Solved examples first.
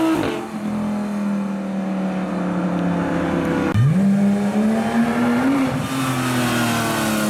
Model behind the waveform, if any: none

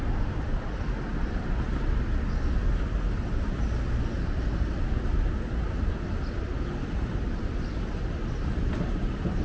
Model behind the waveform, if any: none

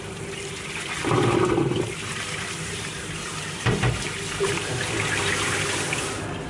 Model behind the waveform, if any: vocoder, BigVGAN v2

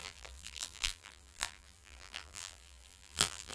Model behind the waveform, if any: vocoder, BigVGAN v2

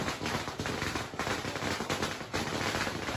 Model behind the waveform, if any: none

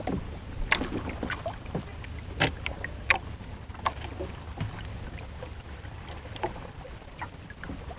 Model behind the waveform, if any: vocoder, BigVGAN v2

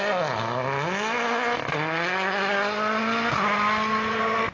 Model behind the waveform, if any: none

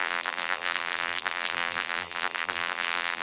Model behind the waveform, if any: vocoder, BigVGAN v2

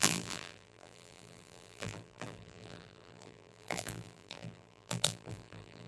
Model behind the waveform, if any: vocoder, BigVGAN v2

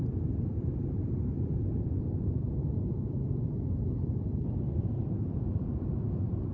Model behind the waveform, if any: vocoder, BigVGAN v2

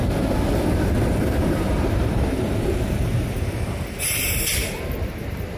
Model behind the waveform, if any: vocoder, BigVGAN v2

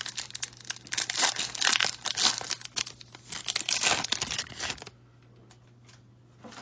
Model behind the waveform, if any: none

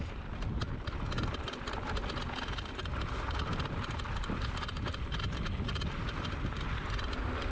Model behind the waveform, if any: none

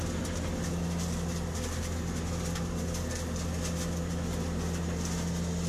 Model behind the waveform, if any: none